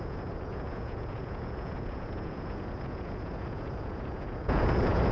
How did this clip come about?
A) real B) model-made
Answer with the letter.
B